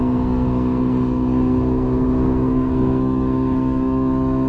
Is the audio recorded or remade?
remade